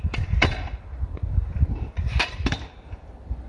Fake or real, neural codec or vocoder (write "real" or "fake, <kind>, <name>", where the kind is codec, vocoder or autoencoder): fake, vocoder, BigVGAN v2